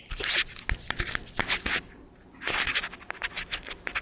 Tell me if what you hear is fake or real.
real